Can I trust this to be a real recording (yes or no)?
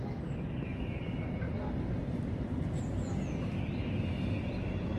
yes